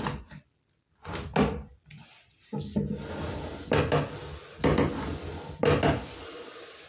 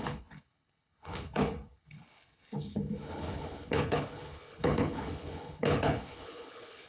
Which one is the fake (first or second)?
second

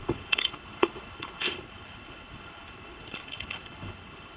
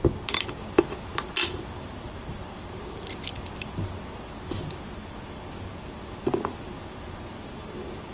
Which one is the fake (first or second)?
first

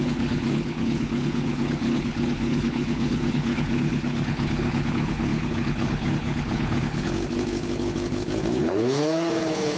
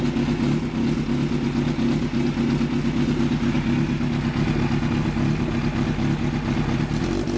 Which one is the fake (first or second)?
first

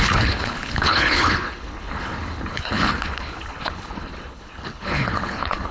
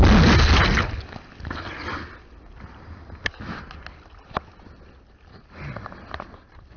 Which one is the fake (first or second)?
first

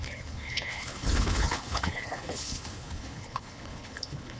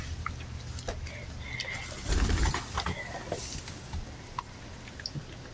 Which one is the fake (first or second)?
first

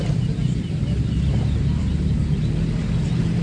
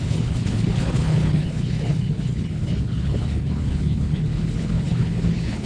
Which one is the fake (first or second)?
second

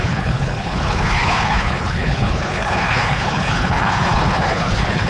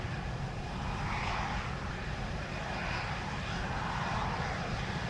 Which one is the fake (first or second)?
first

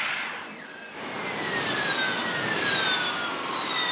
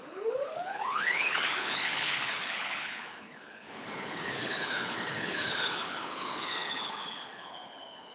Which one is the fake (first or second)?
second